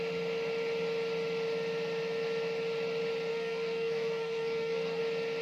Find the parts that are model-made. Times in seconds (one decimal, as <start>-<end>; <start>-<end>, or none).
3.3-5.0